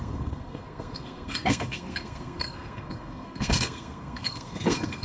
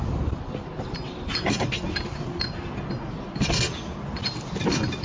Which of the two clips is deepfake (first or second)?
first